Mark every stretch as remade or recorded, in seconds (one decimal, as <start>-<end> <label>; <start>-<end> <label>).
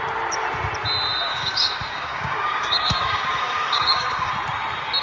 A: 0.0-1.3 recorded; 1.3-4.3 remade; 4.3-5.0 recorded